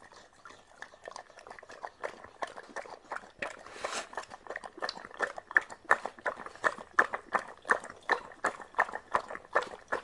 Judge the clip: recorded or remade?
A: recorded